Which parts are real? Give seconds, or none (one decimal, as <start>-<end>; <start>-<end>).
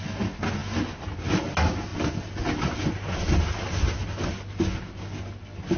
0.0-5.8